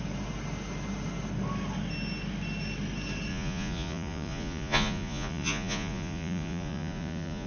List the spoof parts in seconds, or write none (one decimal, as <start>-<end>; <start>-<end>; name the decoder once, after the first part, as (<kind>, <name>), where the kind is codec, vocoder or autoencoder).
3.3-7.5 (vocoder, Vocos)